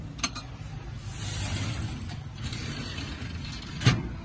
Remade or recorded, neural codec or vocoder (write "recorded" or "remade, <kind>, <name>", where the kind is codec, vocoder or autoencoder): recorded